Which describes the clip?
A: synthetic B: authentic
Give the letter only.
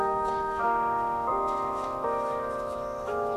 A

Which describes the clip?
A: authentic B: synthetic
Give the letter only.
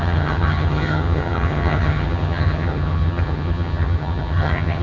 B